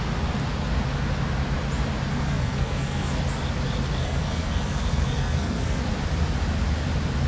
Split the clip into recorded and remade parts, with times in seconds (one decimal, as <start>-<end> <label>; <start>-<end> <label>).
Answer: 0.0-2.1 recorded; 2.1-3.2 remade; 3.2-4.0 recorded; 4.0-5.8 remade; 5.8-7.3 recorded